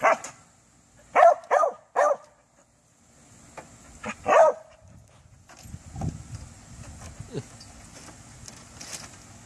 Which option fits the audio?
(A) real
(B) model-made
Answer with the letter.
A